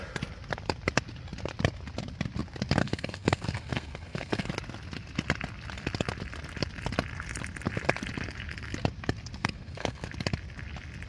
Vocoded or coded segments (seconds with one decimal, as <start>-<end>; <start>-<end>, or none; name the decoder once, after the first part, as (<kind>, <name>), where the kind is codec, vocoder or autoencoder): 2.8-4.5 (codec, SNAC); 9.4-10.1